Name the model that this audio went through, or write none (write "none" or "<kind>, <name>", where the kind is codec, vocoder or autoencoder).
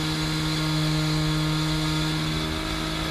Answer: none